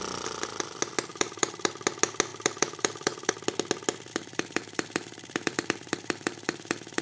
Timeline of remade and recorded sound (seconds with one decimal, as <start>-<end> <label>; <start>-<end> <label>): 0.0-1.1 recorded; 1.1-1.7 remade; 1.7-2.3 recorded; 2.3-3.3 remade; 3.3-4.1 recorded; 4.1-7.0 remade